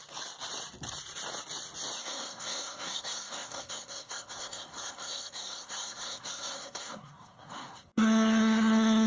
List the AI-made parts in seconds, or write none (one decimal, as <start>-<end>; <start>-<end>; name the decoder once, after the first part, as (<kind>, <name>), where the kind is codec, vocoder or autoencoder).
2.0-9.1 (codec, SNAC)